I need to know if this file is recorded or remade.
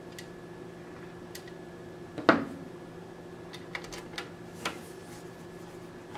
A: recorded